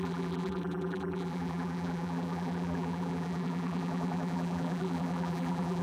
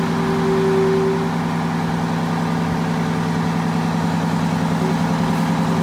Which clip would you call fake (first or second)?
first